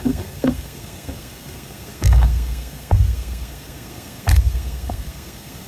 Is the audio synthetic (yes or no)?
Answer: yes